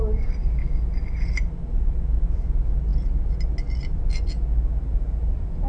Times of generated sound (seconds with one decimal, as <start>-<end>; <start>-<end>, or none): none